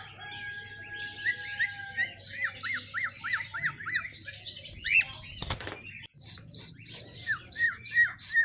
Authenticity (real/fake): real